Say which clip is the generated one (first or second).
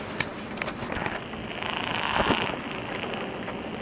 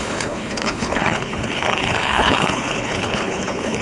second